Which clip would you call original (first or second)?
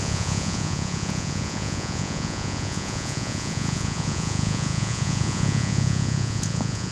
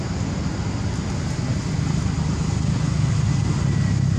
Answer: second